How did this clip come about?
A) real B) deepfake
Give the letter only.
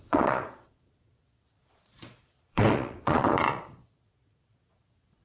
B